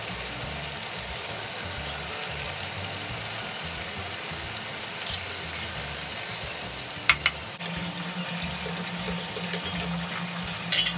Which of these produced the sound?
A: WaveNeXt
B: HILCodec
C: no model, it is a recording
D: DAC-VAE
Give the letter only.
C